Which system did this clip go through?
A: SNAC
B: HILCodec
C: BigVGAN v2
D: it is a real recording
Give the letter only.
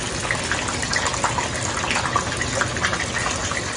D